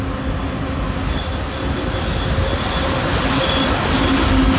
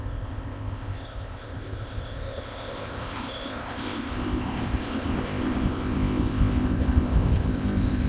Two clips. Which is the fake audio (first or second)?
second